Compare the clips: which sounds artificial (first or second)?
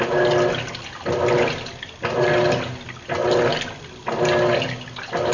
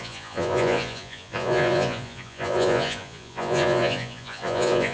second